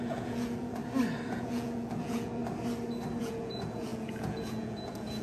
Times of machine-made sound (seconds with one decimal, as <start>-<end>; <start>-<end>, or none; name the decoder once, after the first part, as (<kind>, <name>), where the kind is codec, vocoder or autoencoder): 0.0-0.8 (vocoder, Vocos); 1.3-2.4; 3.2-5.2